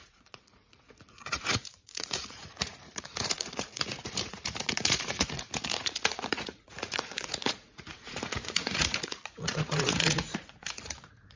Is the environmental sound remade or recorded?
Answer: remade